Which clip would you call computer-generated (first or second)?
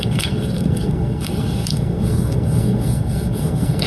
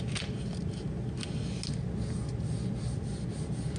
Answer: first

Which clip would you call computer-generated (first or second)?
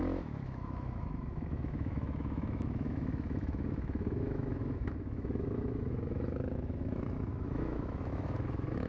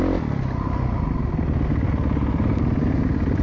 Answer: first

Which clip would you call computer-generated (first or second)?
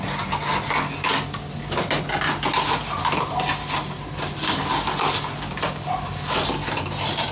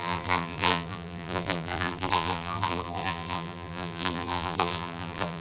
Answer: second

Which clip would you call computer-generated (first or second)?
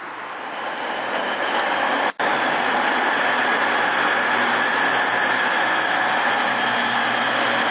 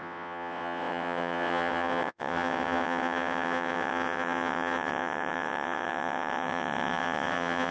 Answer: second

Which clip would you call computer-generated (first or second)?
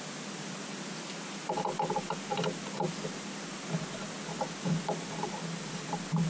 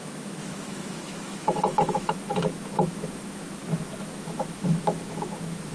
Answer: second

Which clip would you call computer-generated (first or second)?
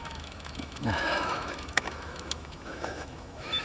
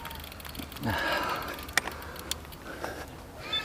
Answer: first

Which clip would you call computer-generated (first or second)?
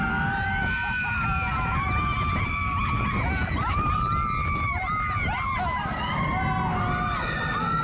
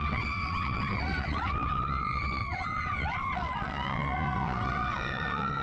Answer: second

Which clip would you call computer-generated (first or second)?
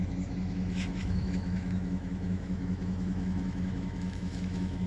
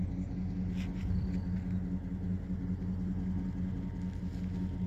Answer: first